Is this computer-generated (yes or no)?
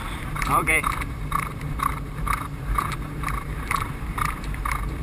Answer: yes